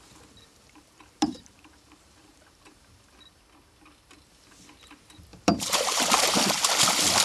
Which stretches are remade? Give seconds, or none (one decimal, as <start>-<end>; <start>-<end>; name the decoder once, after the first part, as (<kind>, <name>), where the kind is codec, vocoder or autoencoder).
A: 0.5-3.2 (vocoder, BigVGAN v2); 5.3-6.3